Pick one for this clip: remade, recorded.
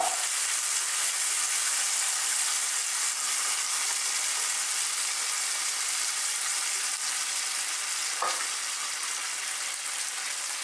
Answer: recorded